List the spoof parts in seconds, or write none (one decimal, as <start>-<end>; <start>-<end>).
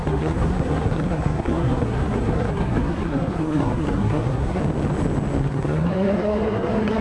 0.0-4.6; 5.4-7.0